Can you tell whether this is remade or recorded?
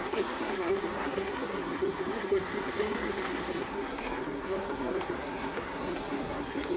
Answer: remade